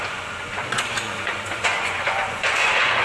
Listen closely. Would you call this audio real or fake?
fake